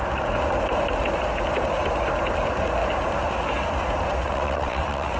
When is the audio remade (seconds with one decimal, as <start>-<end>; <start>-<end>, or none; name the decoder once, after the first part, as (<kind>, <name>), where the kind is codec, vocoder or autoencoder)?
4.2-5.2 (vocoder, WaveNeXt)

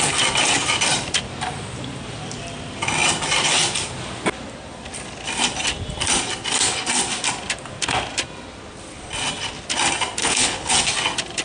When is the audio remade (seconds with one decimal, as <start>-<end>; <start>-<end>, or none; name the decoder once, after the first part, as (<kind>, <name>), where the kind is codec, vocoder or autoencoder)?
10.2-10.7 (codec, HILCodec)